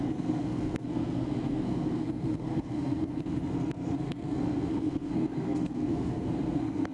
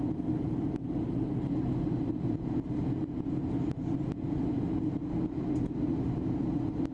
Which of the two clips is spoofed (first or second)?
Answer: first